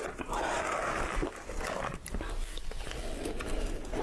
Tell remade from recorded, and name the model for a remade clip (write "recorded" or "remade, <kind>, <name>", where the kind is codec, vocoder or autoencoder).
recorded